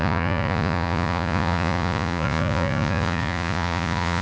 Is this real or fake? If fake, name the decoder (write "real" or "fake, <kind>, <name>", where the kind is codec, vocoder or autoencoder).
fake, vocoder, Vocos